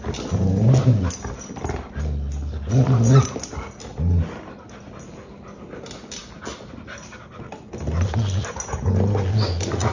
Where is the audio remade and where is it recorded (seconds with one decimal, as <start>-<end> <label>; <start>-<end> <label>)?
0.0-9.9 recorded